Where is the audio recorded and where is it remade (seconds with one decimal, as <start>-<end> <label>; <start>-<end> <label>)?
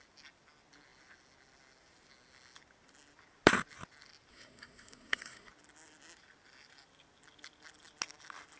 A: 0.0-4.3 recorded; 4.3-5.5 remade; 5.5-8.6 recorded